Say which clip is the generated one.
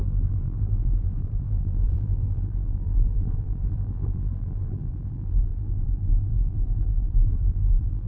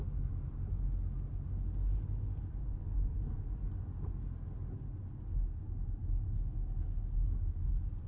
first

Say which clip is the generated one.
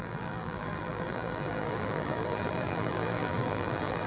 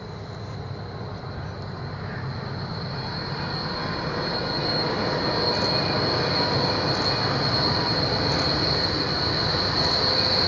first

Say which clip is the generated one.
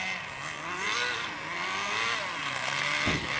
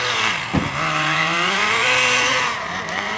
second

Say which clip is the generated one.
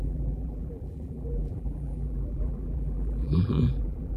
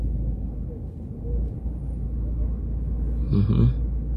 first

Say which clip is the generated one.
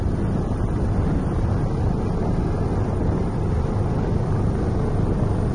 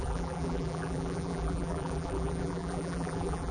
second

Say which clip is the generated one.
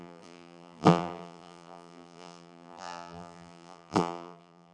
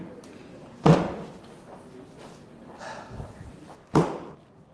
first